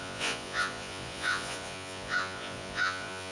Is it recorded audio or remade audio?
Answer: remade